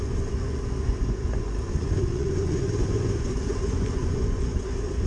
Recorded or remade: remade